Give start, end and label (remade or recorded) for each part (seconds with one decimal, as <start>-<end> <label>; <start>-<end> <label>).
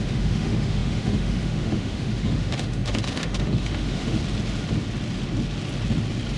0.0-4.2 remade; 4.2-6.4 recorded